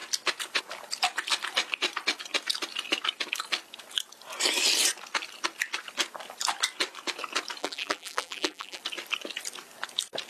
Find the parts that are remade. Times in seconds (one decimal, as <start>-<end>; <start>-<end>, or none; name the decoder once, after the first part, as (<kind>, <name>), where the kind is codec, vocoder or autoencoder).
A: 7.6-8.8 (vocoder, BigVGAN v2)